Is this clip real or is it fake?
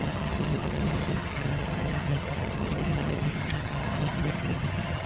fake